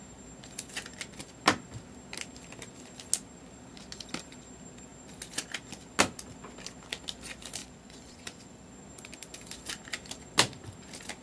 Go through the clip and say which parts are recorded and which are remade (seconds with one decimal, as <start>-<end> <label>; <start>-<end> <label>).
0.0-7.6 recorded; 7.6-8.7 remade; 8.7-11.2 recorded